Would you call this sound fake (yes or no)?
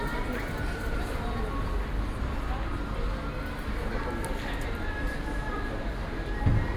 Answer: no